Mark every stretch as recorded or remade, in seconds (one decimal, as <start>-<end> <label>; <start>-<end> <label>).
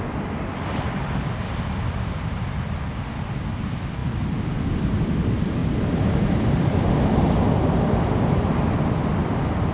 0.0-9.7 recorded